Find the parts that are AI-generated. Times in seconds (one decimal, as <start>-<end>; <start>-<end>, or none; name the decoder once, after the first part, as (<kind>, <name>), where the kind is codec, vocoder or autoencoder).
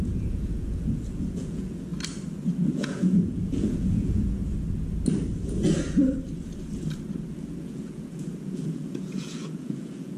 0.0-1.9 (vocoder, Vocos); 2.7-4.4; 7.3-10.2